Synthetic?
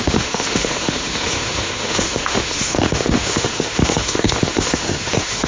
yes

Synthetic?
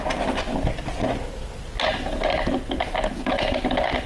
no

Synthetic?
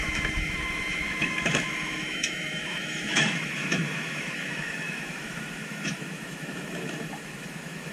yes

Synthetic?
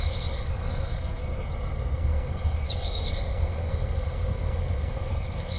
yes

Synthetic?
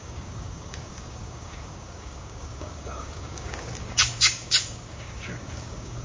yes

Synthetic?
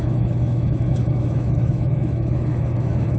yes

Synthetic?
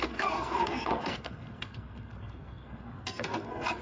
yes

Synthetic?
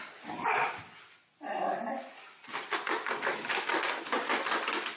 yes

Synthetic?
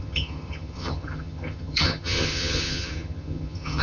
yes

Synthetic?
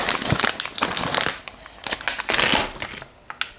no